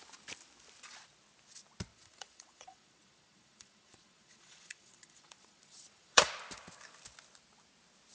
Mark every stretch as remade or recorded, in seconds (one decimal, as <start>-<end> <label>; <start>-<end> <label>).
0.0-1.9 recorded; 1.9-6.3 remade; 6.3-8.1 recorded